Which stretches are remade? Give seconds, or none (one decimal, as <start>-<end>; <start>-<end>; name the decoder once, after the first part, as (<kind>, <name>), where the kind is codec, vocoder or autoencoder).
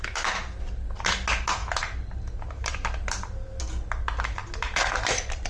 none